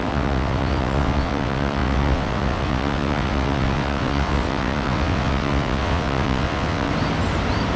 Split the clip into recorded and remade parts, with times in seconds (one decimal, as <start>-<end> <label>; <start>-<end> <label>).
0.0-6.9 remade; 6.9-7.8 recorded